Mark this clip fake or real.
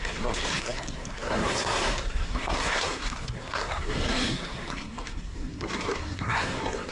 fake